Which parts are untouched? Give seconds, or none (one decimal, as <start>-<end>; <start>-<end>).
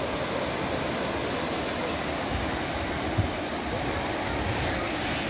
0.0-5.3